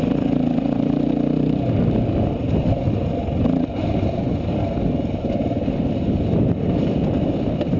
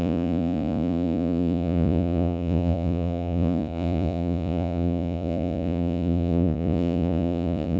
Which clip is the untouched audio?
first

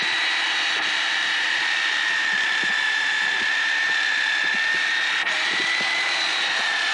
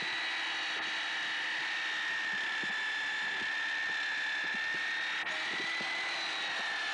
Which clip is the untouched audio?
second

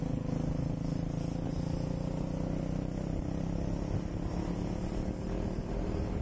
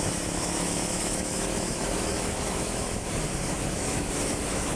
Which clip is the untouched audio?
first